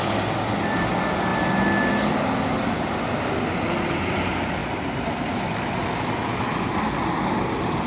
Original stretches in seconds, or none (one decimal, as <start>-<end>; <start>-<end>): 0.0-7.9